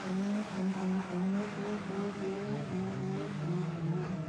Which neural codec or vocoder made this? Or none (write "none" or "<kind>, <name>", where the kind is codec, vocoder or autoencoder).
codec, DAC